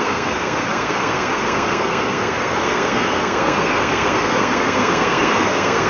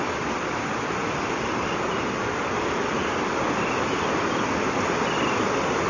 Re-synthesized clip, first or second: first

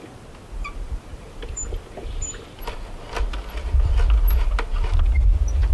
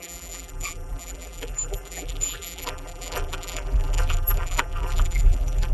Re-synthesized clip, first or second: second